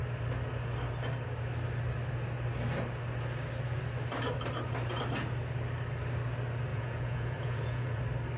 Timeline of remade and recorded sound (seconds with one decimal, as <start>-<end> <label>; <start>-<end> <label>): 0.0-6.7 recorded; 6.7-8.0 remade; 8.0-8.4 recorded